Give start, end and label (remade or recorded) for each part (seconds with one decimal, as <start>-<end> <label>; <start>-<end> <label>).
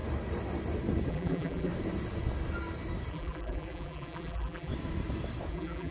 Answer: 0.0-1.1 recorded; 1.1-1.7 remade; 1.7-3.1 recorded; 3.1-4.7 remade; 4.7-5.5 recorded; 5.5-5.9 remade